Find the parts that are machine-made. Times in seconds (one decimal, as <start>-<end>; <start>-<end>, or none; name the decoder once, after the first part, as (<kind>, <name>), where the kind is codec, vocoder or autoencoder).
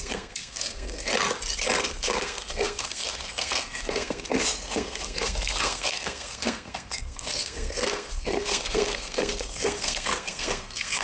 0.0-1.1 (codec, SNAC); 1.8-11.0